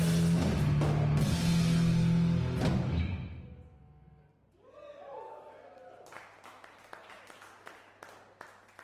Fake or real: real